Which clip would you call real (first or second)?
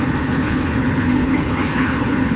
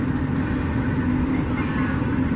second